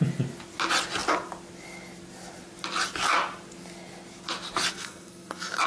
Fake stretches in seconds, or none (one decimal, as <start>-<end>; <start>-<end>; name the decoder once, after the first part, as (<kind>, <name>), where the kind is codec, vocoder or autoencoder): 4.7-5.7 (codec, SNAC)